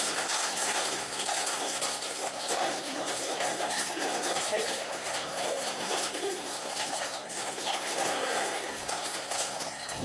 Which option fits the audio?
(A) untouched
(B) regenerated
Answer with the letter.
B